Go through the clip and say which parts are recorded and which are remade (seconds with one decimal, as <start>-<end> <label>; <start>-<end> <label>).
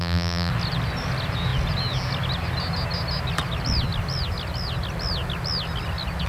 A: 0.0-0.5 remade; 0.5-6.3 recorded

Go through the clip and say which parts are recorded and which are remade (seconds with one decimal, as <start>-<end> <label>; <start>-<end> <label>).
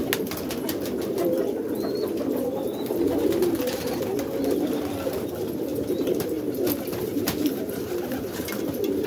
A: 0.0-5.7 recorded; 5.7-6.5 remade; 6.5-6.9 recorded; 6.9-8.5 remade; 8.5-9.1 recorded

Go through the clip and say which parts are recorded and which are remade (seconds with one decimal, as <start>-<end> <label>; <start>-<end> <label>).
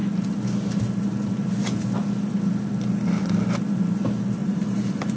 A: 0.0-4.4 recorded; 4.4-5.2 remade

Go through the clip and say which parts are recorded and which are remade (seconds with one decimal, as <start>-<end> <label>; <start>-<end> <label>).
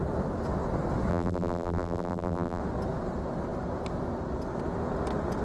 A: 0.0-1.1 recorded; 1.1-2.6 remade; 2.6-5.4 recorded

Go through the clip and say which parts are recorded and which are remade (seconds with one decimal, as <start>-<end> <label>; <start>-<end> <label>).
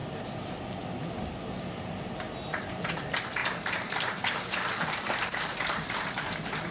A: 0.0-1.6 recorded; 1.6-6.7 remade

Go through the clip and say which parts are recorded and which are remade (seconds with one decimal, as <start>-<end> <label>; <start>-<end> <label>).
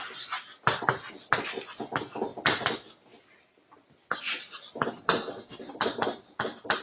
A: 0.0-2.3 recorded; 2.3-6.8 remade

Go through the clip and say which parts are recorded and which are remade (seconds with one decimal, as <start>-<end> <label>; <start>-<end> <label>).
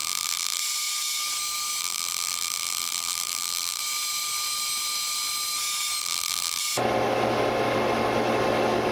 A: 0.0-0.6 remade; 0.6-1.8 recorded; 1.8-3.8 remade; 3.8-6.0 recorded; 6.0-6.6 remade; 6.6-8.9 recorded